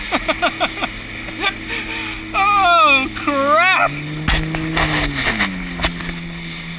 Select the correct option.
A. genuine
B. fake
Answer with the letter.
A